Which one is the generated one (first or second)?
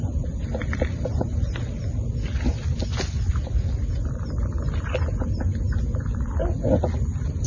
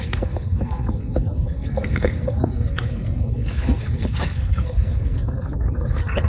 second